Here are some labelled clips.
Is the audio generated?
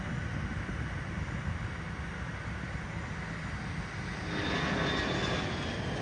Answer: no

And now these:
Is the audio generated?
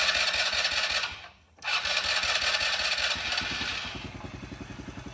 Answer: no